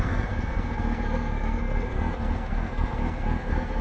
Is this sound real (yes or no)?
no